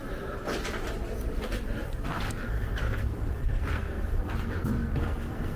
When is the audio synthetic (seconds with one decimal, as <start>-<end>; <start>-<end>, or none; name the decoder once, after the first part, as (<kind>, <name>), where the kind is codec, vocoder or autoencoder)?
2.1-5.6 (codec, SNAC)

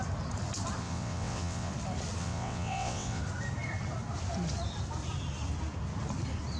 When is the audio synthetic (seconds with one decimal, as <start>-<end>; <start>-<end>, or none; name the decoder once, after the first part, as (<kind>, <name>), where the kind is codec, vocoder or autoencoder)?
0.8-1.7 (vocoder, WaveNeXt); 2.2-3.2

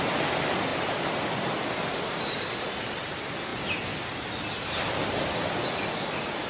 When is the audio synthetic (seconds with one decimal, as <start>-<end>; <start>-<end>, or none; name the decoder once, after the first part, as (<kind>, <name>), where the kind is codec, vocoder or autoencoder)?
none

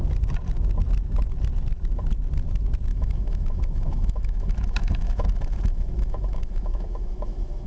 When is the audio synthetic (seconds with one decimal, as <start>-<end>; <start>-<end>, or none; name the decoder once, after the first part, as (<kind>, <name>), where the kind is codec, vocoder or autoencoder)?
2.9-7.7 (autoencoder, DAC-VAE)

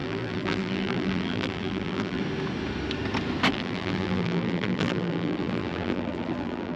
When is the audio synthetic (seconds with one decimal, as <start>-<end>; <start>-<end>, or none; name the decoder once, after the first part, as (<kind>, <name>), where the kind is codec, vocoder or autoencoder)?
0.0-2.2 (vocoder, BigVGAN v2); 3.5-6.8

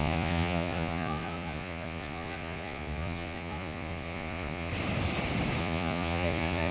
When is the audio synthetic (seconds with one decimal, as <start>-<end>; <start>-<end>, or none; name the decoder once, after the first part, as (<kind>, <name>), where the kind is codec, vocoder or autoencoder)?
0.0-4.7 (vocoder, Vocos); 5.6-6.7

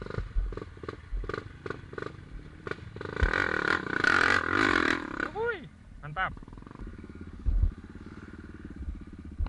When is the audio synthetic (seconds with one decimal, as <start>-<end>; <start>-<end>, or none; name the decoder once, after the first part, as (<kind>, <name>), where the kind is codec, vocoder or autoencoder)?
6.9-7.5 (codec, DAC)

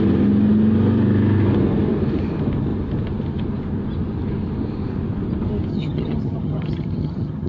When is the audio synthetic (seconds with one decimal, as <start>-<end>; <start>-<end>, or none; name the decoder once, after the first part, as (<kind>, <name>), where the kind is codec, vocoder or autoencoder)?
5.7-7.5 (vocoder, HiFi-GAN)